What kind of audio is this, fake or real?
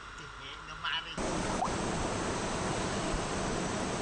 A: real